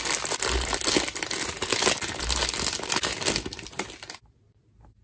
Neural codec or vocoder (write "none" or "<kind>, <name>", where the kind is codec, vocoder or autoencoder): none